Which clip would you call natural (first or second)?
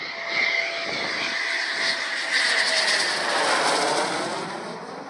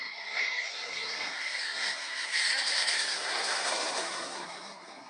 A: first